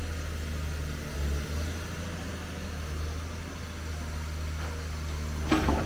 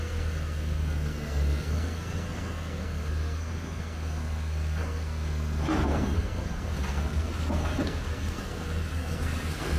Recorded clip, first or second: first